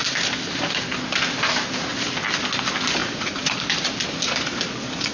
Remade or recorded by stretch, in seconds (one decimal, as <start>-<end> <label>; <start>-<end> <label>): 0.0-3.0 recorded; 3.0-3.6 remade; 3.6-5.1 recorded